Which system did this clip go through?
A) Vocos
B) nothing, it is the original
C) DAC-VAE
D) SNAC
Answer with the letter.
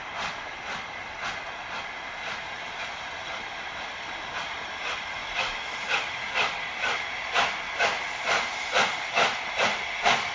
B